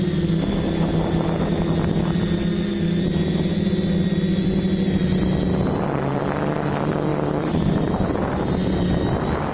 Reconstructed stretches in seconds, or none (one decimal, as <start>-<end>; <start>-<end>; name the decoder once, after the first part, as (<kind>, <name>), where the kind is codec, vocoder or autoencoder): 7.1-8.8 (vocoder, BigVGAN v2)

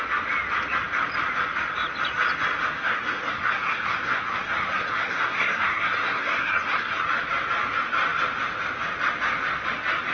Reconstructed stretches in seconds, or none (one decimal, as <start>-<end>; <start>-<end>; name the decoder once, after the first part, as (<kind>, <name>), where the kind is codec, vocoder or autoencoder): 2.8-7.0 (codec, SNAC)

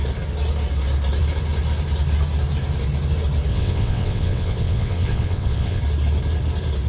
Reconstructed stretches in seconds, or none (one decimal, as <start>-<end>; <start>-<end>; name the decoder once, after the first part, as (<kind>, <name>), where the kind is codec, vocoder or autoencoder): 3.5-5.8 (vocoder, WaveNeXt)

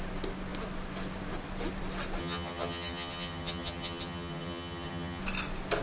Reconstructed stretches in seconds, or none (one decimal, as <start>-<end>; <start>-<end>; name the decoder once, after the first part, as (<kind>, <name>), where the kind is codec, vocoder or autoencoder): 2.2-5.2 (vocoder, HiFi-GAN)

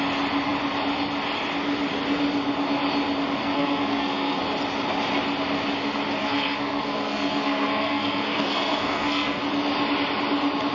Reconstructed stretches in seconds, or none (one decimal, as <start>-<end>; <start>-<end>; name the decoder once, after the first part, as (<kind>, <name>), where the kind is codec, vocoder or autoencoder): 3.4-4.4 (codec, SNAC); 6.2-9.4

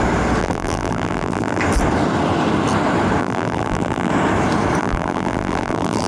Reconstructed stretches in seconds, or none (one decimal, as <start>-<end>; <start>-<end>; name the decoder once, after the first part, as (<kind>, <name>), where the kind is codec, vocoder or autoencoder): 0.4-1.6 (vocoder, BigVGAN v2); 3.2-4.1; 4.8-6.1

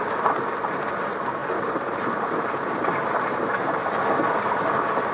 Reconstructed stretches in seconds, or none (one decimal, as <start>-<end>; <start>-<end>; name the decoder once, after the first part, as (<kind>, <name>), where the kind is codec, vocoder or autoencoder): none

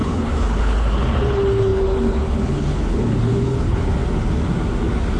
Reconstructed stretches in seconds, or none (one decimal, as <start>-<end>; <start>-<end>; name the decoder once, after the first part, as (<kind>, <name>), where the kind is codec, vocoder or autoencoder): 0.0-4.0 (codec, HILCodec)